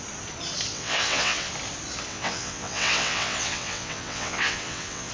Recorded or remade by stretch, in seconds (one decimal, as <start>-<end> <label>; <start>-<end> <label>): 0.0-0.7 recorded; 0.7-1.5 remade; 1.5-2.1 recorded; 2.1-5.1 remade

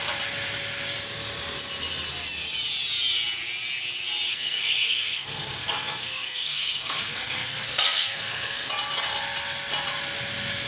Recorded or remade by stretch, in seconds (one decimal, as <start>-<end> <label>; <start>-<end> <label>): 0.0-4.3 recorded; 4.3-8.7 remade; 8.7-10.7 recorded

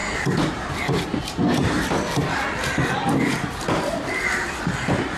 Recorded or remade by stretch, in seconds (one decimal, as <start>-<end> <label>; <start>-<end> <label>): 0.0-5.2 remade